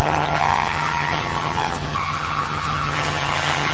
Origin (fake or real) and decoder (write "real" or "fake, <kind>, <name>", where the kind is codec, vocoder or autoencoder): fake, vocoder, HiFi-GAN